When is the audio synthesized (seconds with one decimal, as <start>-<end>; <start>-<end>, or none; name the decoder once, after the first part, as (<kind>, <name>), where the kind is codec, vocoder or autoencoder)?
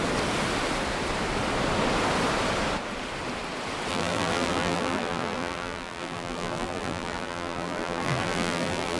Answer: 3.9-9.0 (vocoder, BigVGAN v2)